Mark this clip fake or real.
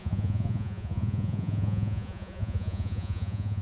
fake